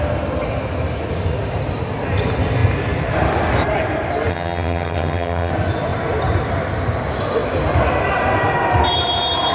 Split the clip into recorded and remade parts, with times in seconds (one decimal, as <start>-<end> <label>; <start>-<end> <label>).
0.0-4.3 recorded; 4.3-5.5 remade; 5.5-9.5 recorded